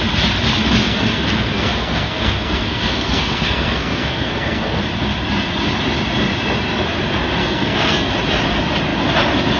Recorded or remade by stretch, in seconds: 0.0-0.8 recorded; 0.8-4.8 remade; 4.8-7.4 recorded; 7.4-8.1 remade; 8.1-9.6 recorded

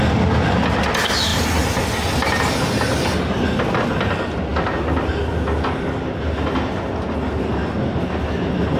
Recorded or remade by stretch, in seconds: 0.0-8.8 recorded

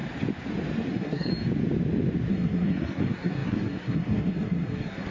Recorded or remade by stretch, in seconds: 0.0-0.9 recorded; 0.9-1.3 remade; 1.3-2.3 recorded; 2.3-5.1 remade

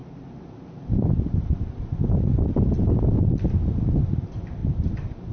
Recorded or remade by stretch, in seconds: 0.0-1.6 remade; 1.6-4.6 recorded; 4.6-5.3 remade